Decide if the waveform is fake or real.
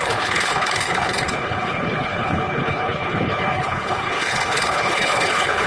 fake